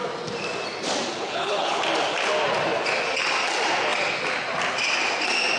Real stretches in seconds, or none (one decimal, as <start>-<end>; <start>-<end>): 0.0-1.1; 1.8-5.6